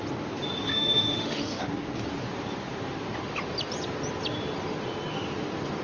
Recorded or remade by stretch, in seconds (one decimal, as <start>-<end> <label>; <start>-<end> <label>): 0.0-0.7 recorded; 0.7-1.6 remade; 1.6-5.8 recorded